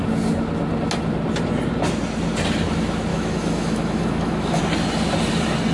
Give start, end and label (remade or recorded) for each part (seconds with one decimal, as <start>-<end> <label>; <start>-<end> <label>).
0.0-3.1 recorded; 3.1-4.6 remade; 4.6-5.7 recorded